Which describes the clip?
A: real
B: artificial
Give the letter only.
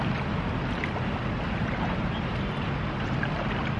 A